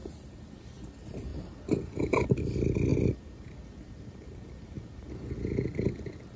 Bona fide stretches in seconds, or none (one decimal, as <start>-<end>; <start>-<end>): 0.5-1.3; 2.5-2.9; 5.1-6.4